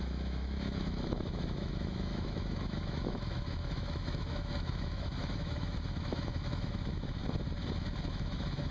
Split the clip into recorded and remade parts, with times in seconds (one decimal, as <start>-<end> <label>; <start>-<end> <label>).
0.0-7.2 remade; 7.2-8.1 recorded; 8.1-8.7 remade